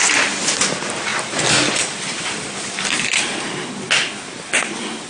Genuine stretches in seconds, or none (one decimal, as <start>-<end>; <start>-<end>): 0.0-1.1; 3.4-5.1